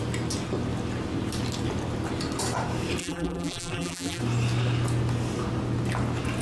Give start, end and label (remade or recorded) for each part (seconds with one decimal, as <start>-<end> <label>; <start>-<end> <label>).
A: 0.0-3.0 recorded; 3.0-4.2 remade; 4.2-6.4 recorded